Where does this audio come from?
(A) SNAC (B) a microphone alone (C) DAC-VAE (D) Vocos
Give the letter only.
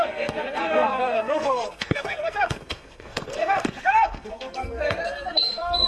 A